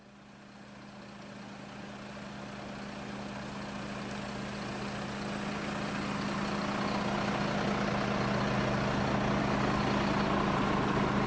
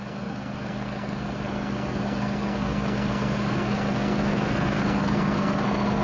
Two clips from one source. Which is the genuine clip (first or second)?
first